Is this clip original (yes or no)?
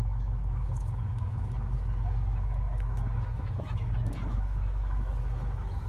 no